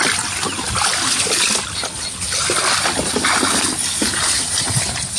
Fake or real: real